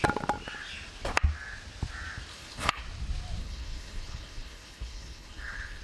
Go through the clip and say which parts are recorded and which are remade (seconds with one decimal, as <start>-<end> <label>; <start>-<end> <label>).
0.0-2.3 recorded; 2.3-2.8 remade; 2.8-3.4 recorded; 3.4-5.8 remade